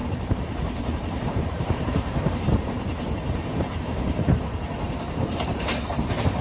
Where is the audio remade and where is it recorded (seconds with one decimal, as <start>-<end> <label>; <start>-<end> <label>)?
0.0-6.4 remade